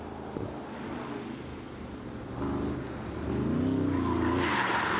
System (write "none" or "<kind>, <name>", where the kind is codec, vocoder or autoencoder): none